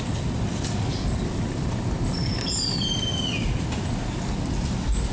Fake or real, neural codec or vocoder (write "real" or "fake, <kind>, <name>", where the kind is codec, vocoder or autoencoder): real